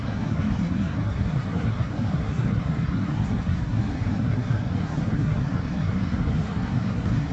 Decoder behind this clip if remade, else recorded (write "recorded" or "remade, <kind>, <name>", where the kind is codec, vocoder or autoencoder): remade, codec, SNAC